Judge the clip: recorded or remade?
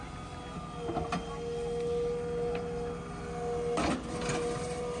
recorded